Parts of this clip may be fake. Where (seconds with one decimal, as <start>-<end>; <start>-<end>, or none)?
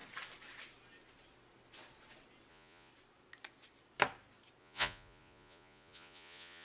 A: 2.5-2.9; 4.6-6.6